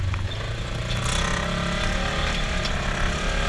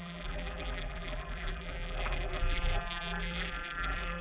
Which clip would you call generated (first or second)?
second